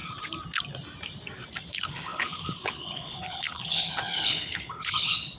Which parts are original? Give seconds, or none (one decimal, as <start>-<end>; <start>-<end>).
0.0-1.7